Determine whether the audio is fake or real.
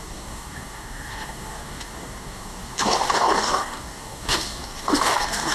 fake